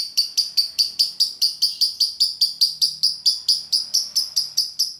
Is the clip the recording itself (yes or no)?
no